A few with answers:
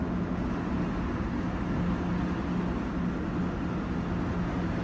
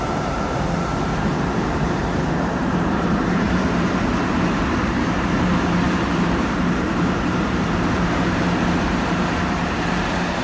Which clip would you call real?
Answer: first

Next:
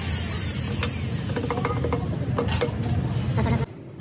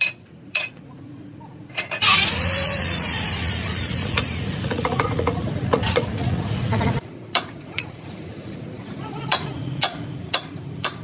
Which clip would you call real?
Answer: first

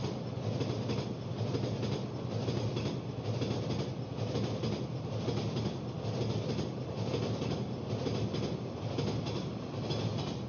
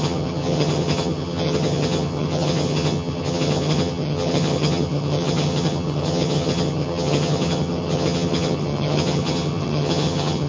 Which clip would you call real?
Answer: first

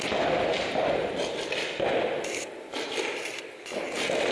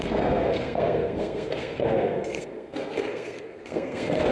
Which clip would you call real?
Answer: first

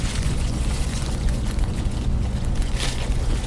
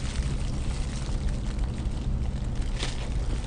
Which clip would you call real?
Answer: second